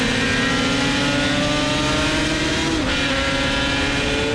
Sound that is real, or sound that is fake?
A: real